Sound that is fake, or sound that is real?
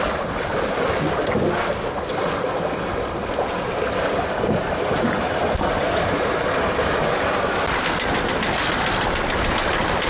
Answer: real